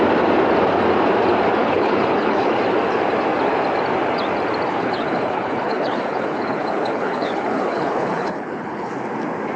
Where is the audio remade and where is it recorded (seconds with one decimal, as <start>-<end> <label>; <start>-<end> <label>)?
0.0-1.6 recorded; 1.6-2.5 remade; 2.5-4.7 recorded; 4.7-8.9 remade; 8.9-9.6 recorded